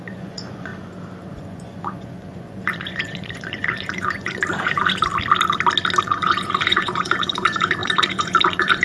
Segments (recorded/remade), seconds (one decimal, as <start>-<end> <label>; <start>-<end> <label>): 0.0-0.7 remade; 0.7-1.3 recorded; 1.3-5.1 remade; 5.1-6.0 recorded; 6.0-8.8 remade